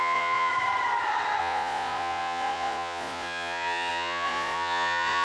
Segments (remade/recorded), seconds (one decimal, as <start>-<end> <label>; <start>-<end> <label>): 0.0-0.5 remade; 0.5-1.4 recorded; 1.4-5.2 remade